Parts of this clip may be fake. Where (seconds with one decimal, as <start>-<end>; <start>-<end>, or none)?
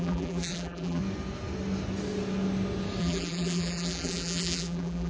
0.0-1.0; 3.0-5.1